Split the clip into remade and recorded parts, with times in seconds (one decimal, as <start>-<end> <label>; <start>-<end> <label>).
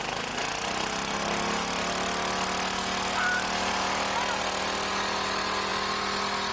0.0-6.5 recorded